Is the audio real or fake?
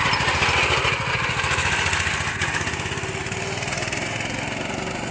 real